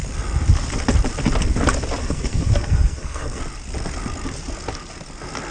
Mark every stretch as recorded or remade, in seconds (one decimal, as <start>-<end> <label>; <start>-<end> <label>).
0.0-2.0 recorded; 2.0-3.4 remade; 3.4-5.5 recorded